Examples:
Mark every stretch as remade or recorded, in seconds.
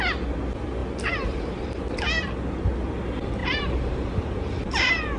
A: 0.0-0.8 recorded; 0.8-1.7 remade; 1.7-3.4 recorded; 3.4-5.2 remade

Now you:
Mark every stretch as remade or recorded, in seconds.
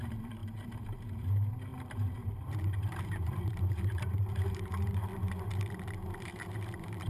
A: 0.0-5.1 remade; 5.1-6.3 recorded; 6.3-7.1 remade